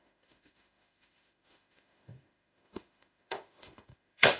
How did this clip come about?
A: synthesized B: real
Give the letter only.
A